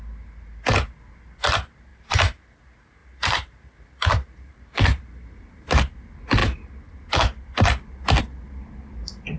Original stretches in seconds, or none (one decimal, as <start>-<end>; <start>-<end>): 0.0-1.9; 2.4-3.0; 5.8-9.4